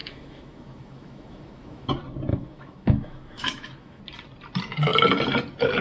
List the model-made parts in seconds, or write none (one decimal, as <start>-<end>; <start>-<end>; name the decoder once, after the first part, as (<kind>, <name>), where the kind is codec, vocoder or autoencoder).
0.0-1.9 (autoencoder, DAC-VAE); 2.3-4.0